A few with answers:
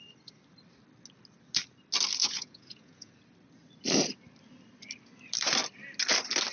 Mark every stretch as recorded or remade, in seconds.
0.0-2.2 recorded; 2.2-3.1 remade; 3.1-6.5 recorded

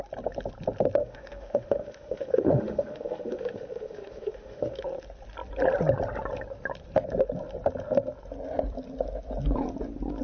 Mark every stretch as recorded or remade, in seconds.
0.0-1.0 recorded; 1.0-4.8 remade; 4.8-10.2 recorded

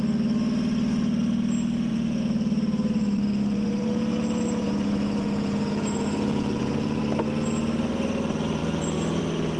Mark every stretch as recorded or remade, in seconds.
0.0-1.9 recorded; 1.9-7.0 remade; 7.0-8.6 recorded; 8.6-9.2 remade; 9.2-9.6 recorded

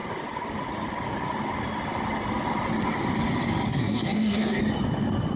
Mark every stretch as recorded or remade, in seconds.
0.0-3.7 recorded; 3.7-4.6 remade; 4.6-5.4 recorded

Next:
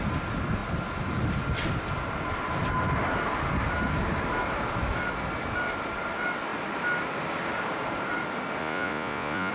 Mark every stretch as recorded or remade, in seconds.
0.0-8.6 recorded; 8.6-9.5 remade